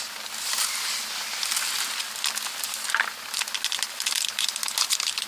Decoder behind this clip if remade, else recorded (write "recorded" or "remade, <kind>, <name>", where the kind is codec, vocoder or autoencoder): recorded